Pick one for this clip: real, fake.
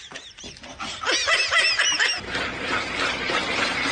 real